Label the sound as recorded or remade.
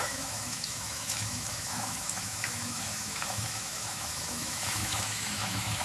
remade